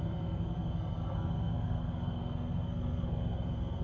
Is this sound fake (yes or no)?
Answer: yes